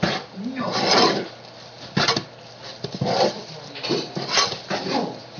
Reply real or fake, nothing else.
real